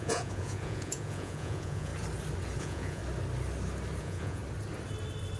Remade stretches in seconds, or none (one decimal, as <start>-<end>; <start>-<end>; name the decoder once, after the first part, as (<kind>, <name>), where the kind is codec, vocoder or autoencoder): 0.0-1.9 (vocoder, Vocos); 2.6-3.0; 4.0-4.4